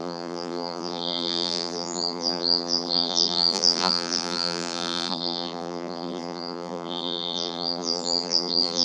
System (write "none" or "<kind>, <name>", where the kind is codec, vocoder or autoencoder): vocoder, BigVGAN v2